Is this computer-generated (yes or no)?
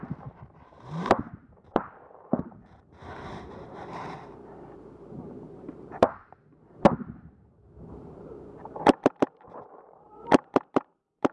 yes